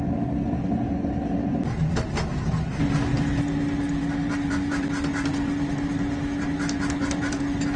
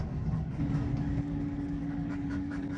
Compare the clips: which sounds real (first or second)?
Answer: first